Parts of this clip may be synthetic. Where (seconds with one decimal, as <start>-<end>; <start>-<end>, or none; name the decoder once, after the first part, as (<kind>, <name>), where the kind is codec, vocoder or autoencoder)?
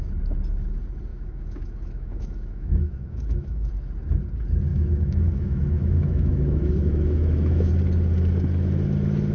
1.1-3.7 (autoencoder, DAC-VAE); 4.7-7.7